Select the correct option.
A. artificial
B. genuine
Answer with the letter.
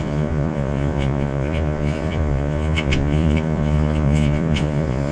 A